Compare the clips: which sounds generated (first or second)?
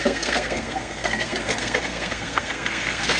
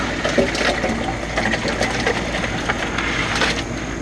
first